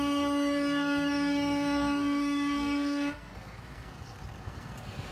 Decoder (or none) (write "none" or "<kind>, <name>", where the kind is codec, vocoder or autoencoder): codec, SNAC